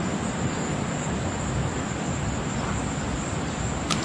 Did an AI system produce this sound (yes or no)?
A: no